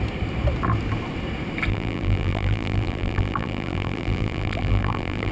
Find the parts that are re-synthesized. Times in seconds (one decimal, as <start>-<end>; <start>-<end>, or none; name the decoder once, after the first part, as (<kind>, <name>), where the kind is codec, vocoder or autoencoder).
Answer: 1.7-5.3 (vocoder, BigVGAN v2)